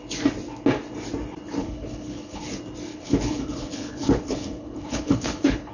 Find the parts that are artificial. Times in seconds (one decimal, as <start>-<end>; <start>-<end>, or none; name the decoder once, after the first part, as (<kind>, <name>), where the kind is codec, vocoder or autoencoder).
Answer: 1.6-2.4 (codec, HILCodec); 2.9-5.7